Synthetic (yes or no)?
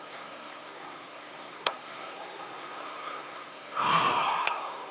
yes